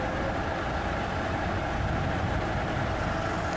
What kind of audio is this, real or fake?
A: real